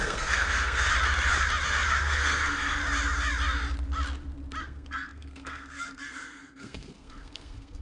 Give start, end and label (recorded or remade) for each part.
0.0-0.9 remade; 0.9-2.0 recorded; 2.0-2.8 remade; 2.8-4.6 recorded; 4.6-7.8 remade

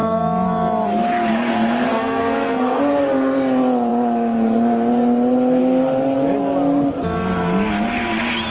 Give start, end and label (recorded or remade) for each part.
0.0-1.9 recorded; 1.9-2.8 remade; 2.8-8.5 recorded

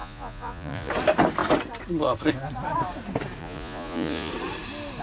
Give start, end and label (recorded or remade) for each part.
0.0-0.9 remade; 0.9-3.4 recorded; 3.4-4.3 remade; 4.3-5.0 recorded

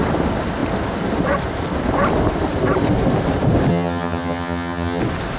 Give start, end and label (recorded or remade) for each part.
0.0-3.7 recorded; 3.7-5.0 remade; 5.0-5.4 recorded

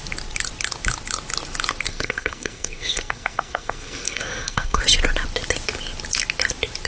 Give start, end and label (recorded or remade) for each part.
0.0-1.9 recorded; 1.9-4.8 remade; 4.8-6.9 recorded